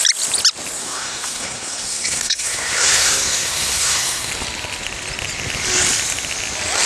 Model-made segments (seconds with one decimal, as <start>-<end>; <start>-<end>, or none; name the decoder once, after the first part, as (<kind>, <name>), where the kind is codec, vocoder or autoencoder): 0.8-4.3 (codec, SNAC)